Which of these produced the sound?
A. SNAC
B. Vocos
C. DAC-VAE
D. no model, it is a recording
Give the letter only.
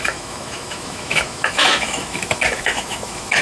C